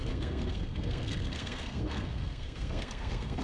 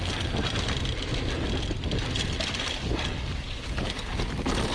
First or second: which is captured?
second